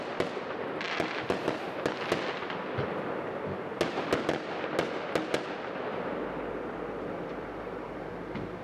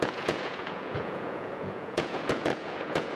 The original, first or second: first